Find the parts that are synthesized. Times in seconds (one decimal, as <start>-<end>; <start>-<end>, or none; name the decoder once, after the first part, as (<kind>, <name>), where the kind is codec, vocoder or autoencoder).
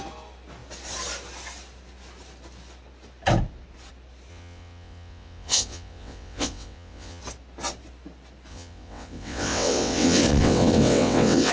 4.3-7.2 (vocoder, WaveNeXt); 8.5-11.5